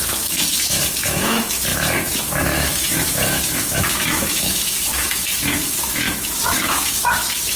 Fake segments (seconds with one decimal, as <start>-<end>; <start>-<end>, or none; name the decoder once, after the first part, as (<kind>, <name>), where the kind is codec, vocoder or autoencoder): 0.0-7.6 (autoencoder, DAC-VAE)